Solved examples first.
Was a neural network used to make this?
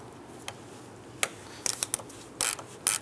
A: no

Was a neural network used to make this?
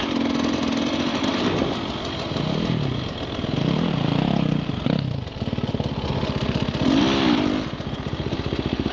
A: no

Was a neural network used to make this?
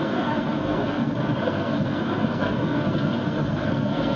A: yes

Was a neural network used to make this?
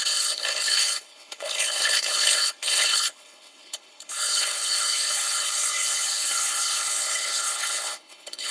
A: yes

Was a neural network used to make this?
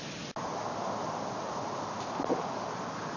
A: no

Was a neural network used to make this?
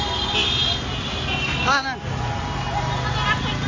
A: no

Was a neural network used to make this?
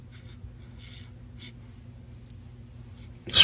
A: no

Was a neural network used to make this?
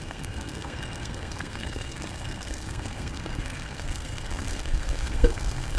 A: yes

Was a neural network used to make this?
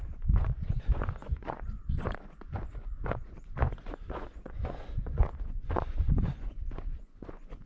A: yes